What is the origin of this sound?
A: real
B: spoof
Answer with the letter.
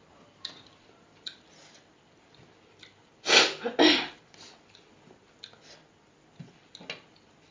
A